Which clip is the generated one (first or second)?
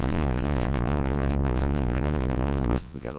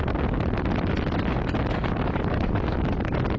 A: first